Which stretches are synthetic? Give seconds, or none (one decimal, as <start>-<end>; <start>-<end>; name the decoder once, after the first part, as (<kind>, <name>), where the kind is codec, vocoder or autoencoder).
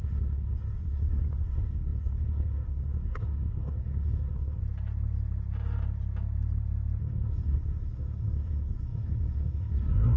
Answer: 0.0-4.6 (codec, SNAC); 7.0-10.2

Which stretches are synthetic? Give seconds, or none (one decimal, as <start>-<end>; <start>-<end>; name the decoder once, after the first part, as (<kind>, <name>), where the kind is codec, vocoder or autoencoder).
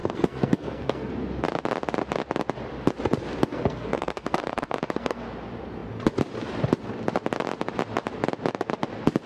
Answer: 0.0-1.1 (codec, SNAC); 3.4-5.2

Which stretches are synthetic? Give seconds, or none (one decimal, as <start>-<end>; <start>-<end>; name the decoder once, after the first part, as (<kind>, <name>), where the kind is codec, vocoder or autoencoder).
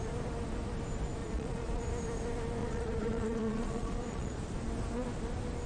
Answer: 1.2-1.9 (vocoder, Vocos); 2.6-4.4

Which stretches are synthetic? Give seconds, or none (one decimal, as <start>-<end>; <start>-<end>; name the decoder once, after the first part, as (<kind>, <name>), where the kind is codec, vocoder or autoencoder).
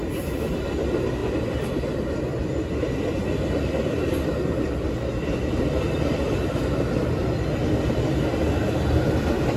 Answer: none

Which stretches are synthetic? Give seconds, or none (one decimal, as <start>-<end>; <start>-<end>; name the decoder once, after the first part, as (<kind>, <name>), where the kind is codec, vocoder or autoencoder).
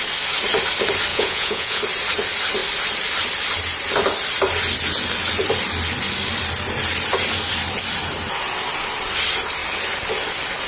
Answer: 1.1-1.8 (vocoder, Vocos)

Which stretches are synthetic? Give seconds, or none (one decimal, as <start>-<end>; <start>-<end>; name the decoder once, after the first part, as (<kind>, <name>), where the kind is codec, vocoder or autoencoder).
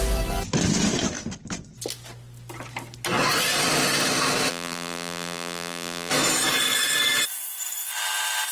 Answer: 4.5-6.1 (vocoder, BigVGAN v2)